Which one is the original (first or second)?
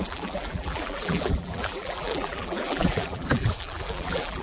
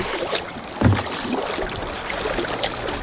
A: second